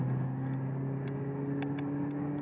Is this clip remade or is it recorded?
recorded